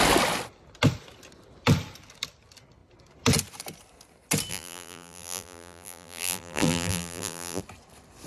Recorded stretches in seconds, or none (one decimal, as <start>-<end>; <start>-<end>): 0.0-4.5; 7.6-8.3